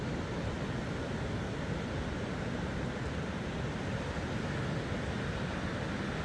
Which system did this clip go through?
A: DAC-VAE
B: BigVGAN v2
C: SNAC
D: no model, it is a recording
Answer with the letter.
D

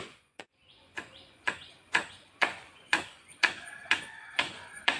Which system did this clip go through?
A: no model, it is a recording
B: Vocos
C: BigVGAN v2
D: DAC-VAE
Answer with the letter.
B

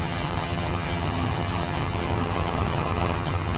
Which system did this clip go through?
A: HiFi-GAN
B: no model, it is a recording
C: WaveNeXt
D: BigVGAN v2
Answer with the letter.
A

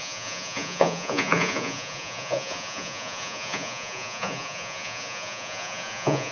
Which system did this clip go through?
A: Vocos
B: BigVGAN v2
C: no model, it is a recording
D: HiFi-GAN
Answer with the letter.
A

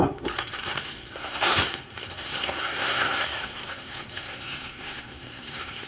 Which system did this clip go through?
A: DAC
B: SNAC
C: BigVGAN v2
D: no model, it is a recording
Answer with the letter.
B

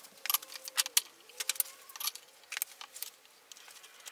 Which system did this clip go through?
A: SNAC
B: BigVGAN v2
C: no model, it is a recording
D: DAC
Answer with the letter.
C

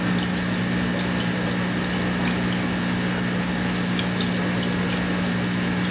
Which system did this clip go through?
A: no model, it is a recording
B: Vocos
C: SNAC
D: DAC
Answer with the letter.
A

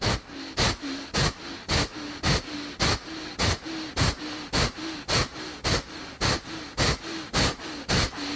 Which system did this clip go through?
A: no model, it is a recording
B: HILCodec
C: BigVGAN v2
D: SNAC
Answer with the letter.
A